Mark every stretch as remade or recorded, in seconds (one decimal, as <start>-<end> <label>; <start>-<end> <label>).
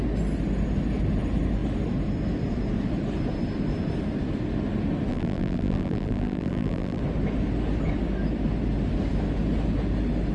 0.0-5.1 recorded; 5.1-7.0 remade; 7.0-10.3 recorded